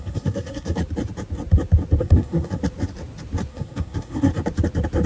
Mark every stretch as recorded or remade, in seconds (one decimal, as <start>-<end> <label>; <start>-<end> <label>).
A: 0.0-0.8 remade; 0.8-2.0 recorded; 2.0-2.6 remade; 2.6-3.5 recorded; 3.5-4.3 remade; 4.3-5.1 recorded